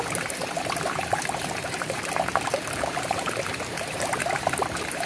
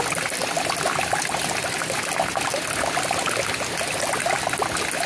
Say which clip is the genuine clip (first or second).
second